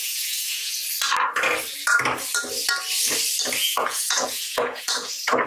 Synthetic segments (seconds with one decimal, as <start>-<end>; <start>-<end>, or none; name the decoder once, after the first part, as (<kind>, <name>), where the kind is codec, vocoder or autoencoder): 0.0-0.8 (vocoder, Vocos); 3.6-5.1